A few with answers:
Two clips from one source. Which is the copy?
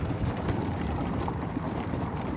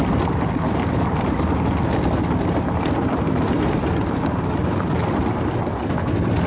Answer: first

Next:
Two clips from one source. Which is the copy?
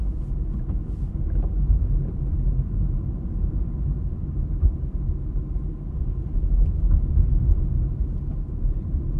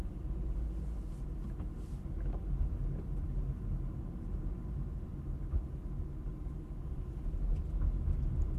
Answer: first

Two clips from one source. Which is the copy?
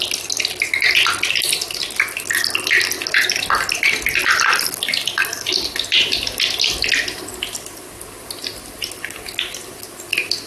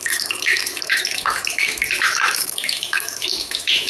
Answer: second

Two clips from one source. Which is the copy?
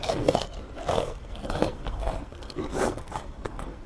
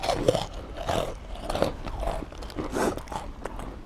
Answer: first